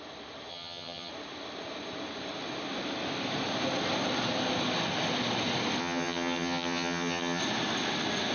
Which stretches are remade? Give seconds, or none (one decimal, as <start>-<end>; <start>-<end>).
0.5-1.1; 5.8-7.4